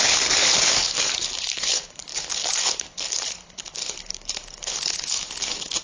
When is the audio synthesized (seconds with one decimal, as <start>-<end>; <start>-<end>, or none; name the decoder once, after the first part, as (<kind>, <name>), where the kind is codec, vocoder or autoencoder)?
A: 0.0-5.8 (codec, HILCodec)